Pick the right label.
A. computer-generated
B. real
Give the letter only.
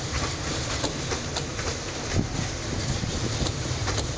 A